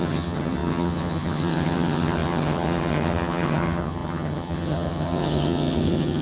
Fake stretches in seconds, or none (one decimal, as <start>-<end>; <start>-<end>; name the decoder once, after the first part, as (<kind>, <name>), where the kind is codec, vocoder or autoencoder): 0.0-6.2 (vocoder, HiFi-GAN)